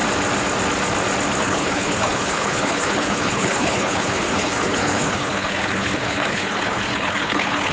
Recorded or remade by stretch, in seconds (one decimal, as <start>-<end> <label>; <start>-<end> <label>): 0.0-1.4 recorded; 1.4-7.7 remade